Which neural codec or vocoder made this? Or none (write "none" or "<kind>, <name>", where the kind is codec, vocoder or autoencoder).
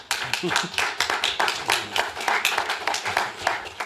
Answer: none